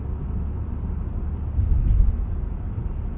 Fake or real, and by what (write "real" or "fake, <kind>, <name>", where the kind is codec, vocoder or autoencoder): real